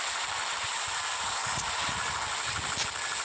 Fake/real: real